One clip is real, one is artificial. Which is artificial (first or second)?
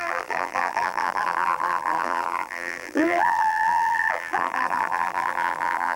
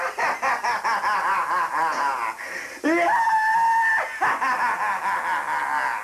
first